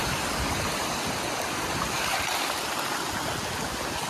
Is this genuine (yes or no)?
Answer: yes